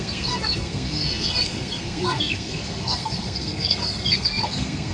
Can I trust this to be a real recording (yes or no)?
no